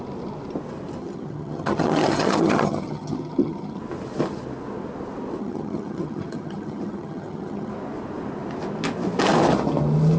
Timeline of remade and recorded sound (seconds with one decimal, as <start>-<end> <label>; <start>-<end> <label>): 0.0-1.0 recorded; 1.0-3.8 remade; 3.8-5.4 recorded; 5.4-7.7 remade; 7.7-10.2 recorded